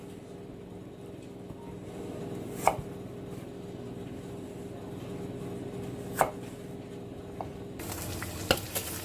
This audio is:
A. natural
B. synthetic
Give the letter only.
A